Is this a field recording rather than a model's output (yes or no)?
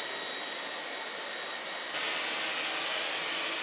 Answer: yes